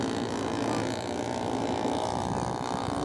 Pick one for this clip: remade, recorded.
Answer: recorded